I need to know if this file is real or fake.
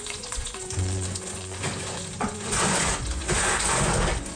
fake